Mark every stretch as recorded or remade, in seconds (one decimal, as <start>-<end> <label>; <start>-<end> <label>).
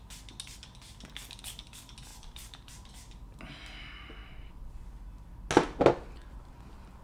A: 0.0-2.1 recorded; 2.1-2.9 remade; 2.9-7.0 recorded